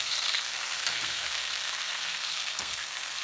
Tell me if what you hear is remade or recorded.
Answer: remade